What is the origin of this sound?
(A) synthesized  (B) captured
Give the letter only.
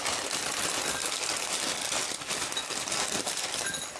A